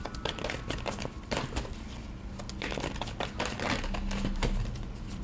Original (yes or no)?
yes